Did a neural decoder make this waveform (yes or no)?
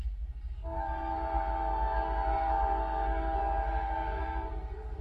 yes